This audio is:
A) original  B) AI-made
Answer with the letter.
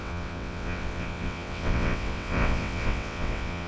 B